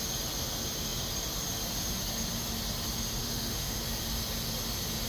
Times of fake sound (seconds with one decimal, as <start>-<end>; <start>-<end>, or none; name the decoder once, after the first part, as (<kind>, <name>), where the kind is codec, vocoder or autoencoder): 3.2-3.8 (autoencoder, DAC-VAE)